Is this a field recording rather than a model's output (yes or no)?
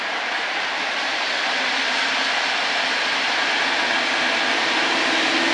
yes